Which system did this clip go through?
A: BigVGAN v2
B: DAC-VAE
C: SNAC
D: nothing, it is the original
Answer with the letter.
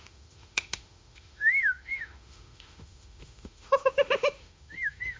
B